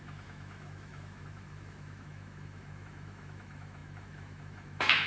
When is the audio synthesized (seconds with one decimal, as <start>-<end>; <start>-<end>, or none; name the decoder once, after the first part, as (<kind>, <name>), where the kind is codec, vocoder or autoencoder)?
0.0-5.1 (autoencoder, DAC-VAE)